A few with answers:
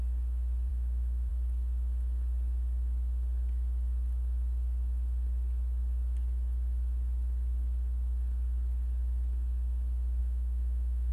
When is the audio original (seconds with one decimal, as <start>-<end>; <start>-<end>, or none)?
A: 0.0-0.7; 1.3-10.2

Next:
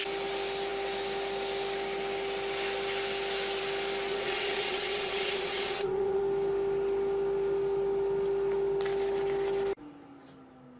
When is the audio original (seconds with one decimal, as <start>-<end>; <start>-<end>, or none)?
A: 0.0-4.1; 6.2-10.8

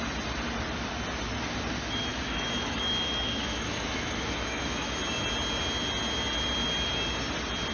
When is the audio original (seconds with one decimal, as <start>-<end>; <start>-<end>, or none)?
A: 0.0-2.1; 5.0-7.7

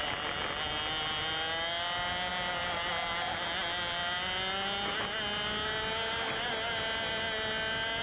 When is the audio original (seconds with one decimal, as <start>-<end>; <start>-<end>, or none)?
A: 0.0-8.0

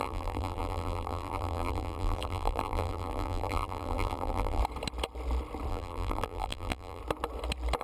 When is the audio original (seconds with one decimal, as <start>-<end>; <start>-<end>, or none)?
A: 4.6-5.7; 7.0-7.8

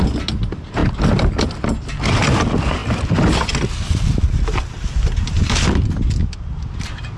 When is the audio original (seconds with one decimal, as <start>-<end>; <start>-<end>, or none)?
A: 0.0-7.2

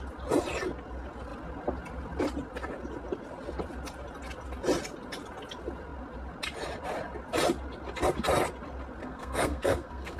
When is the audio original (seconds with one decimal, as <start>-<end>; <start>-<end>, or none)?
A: 0.0-9.0

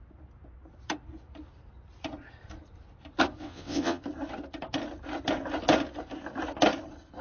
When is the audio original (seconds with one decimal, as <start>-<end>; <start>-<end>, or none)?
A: 0.0-3.4; 4.0-7.2